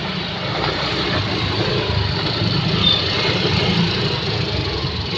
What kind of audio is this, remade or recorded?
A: remade